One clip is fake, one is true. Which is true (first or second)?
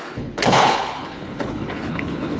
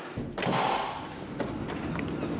second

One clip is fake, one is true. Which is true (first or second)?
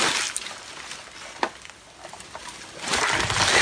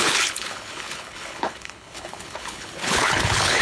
first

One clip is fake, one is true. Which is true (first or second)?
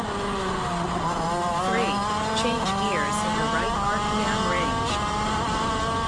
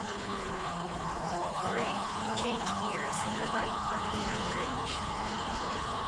first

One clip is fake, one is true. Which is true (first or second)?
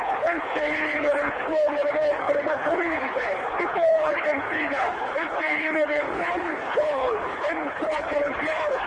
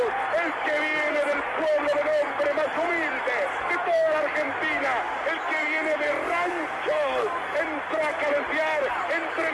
second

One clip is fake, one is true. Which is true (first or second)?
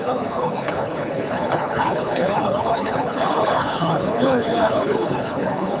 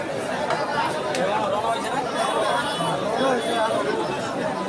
second